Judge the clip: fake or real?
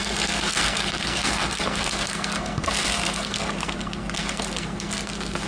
fake